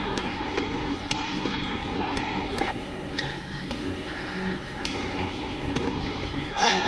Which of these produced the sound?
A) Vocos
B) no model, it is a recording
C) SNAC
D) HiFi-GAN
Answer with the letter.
C